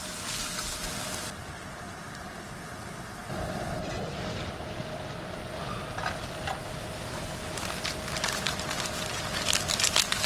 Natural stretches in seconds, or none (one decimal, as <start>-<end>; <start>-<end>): 0.0-6.6; 7.6-10.3

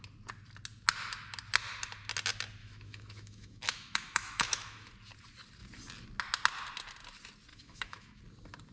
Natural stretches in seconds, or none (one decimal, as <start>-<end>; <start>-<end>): 0.0-2.6; 4.9-7.5; 8.2-8.7

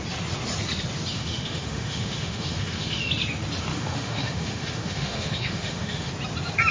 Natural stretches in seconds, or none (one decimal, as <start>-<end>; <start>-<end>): 0.0-1.1; 3.1-3.7; 6.1-6.7